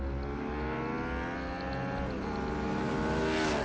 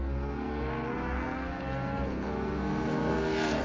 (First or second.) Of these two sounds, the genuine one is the first